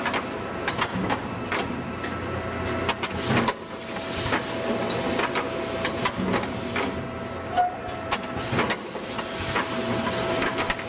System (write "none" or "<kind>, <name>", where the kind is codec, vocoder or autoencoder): none